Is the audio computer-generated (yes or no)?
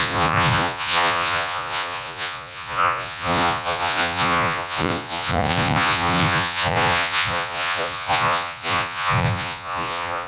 yes